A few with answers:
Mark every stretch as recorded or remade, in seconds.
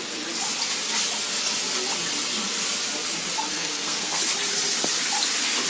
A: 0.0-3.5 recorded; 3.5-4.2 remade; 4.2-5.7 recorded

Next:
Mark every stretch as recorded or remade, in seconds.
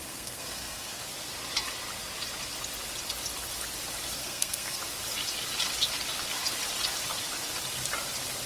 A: 0.0-1.0 remade; 1.0-4.2 recorded; 4.2-4.8 remade; 4.8-8.5 recorded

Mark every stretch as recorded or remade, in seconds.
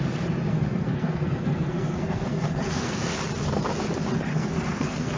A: 0.0-0.5 recorded; 0.5-3.2 remade; 3.2-4.3 recorded; 4.3-5.2 remade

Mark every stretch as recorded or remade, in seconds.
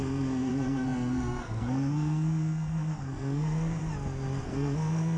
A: 0.0-3.8 remade; 3.8-4.4 recorded; 4.4-5.2 remade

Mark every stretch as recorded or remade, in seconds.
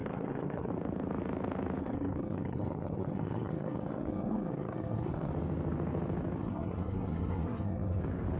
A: 0.0-0.7 remade; 0.7-1.8 recorded; 1.8-5.3 remade; 5.3-6.4 recorded; 6.4-8.0 remade; 8.0-8.4 recorded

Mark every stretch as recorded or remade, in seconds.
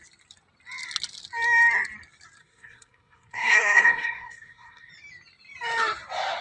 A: 0.0-2.4 recorded; 2.4-4.9 remade; 4.9-6.4 recorded